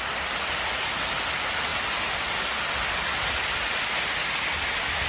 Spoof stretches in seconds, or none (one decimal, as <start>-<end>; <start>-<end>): none